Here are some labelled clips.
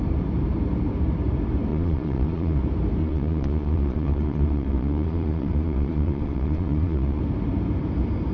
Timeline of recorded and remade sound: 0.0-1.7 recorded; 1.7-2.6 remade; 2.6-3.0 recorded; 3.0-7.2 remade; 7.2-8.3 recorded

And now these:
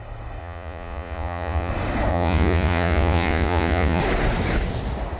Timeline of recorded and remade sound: 0.0-0.4 recorded; 0.4-1.7 remade; 1.7-2.1 recorded; 2.1-4.0 remade; 4.0-5.2 recorded

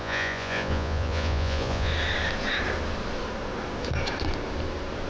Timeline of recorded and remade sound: 0.0-1.9 remade; 1.9-5.1 recorded

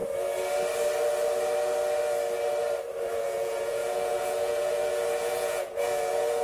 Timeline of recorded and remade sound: 0.0-3.1 recorded; 3.1-6.4 remade